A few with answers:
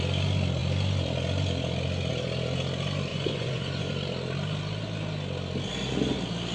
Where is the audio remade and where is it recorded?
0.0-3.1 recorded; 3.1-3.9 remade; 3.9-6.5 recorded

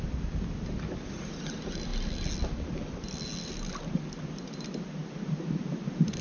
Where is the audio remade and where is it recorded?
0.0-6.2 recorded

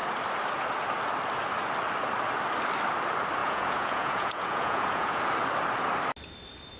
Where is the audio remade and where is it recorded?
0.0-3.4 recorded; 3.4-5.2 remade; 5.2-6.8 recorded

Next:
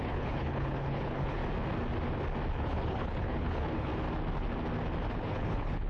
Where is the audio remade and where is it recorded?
0.0-1.4 remade; 1.4-2.5 recorded; 2.5-3.9 remade; 3.9-5.1 recorded; 5.1-5.9 remade

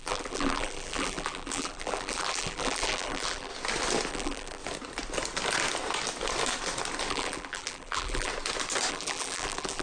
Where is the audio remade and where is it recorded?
0.0-3.5 remade; 3.5-4.1 recorded; 4.1-4.6 remade; 4.6-7.1 recorded; 7.1-8.3 remade; 8.3-8.9 recorded; 8.9-9.8 remade

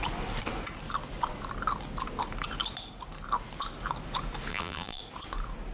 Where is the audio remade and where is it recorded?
0.0-4.5 recorded; 4.5-5.0 remade; 5.0-5.7 recorded

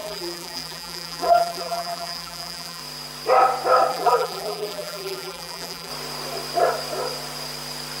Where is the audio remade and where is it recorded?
0.0-2.8 remade; 2.8-3.9 recorded; 3.9-5.9 remade; 5.9-8.0 recorded

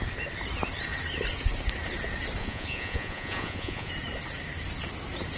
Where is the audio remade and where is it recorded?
0.0-2.4 recorded; 2.4-3.9 remade; 3.9-5.4 recorded